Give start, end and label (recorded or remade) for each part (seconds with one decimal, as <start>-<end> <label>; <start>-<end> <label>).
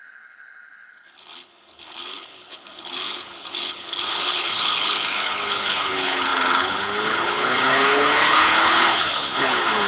0.0-9.9 remade